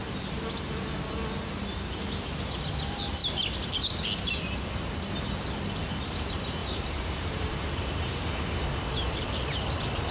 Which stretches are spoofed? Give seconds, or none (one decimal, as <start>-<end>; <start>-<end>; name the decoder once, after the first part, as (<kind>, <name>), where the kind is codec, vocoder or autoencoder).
6.6-8.2 (vocoder, BigVGAN v2)